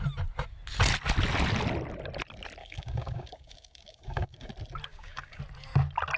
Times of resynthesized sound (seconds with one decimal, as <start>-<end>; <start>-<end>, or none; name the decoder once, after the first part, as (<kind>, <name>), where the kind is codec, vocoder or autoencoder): 2.6-4.5 (codec, DAC); 4.9-5.4